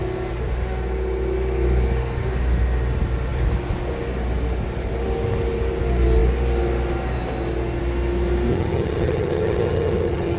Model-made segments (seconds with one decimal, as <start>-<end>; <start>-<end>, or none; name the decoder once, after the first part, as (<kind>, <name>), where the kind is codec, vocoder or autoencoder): 8.5-10.4 (vocoder, HiFi-GAN)